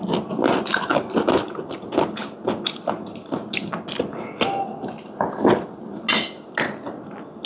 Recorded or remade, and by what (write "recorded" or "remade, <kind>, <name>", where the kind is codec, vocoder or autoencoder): recorded